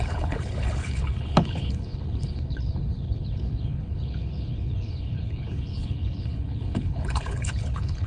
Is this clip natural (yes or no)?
no